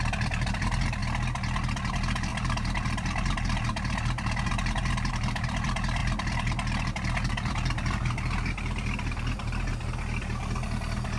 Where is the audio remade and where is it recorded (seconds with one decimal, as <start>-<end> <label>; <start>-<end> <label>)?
0.0-1.0 remade; 1.0-1.9 recorded; 1.9-9.7 remade; 9.7-11.2 recorded